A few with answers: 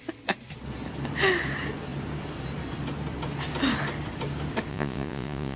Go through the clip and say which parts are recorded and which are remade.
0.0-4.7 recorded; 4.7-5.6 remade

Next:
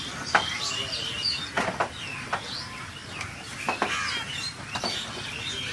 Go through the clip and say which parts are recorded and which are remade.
0.0-5.7 recorded

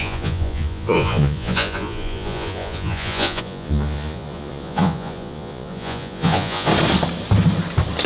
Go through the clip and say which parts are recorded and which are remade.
0.0-6.7 remade; 6.7-8.1 recorded

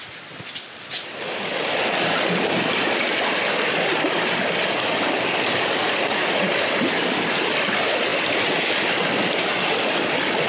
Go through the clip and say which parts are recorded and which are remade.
0.0-5.8 recorded; 5.8-6.5 remade; 6.5-10.5 recorded

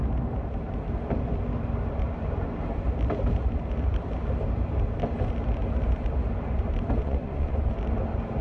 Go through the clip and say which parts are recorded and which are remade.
0.0-7.0 recorded; 7.0-7.7 remade; 7.7-8.4 recorded

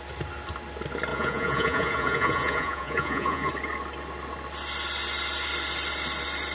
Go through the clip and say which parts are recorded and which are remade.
0.0-1.1 recorded; 1.1-3.5 remade; 3.5-6.5 recorded

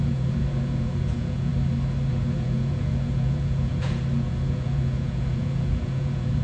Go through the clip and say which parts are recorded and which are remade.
0.0-1.5 remade; 1.5-2.1 recorded; 2.1-6.4 remade

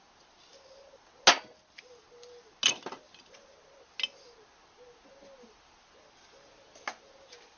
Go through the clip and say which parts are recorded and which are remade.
0.0-7.6 recorded